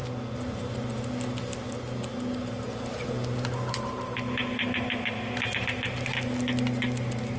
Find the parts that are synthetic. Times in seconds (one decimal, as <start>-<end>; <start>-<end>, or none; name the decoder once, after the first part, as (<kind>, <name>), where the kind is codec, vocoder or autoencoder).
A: none